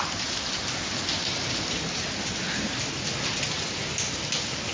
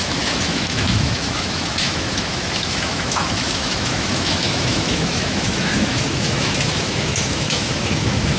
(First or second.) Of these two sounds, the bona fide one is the first